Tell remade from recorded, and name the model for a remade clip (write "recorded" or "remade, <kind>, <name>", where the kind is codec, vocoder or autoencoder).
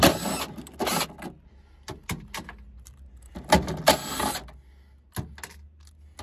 recorded